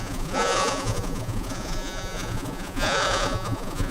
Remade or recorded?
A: remade